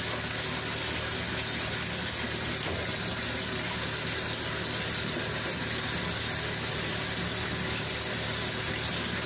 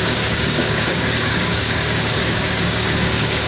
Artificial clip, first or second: second